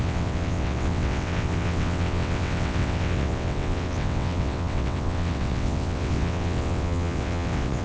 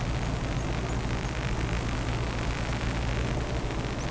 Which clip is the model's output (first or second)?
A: first